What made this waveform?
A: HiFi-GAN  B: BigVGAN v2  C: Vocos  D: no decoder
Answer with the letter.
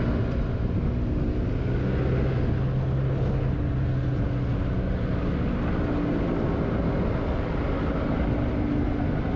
D